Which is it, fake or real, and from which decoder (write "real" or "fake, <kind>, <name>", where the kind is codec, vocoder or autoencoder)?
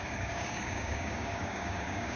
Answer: fake, codec, DAC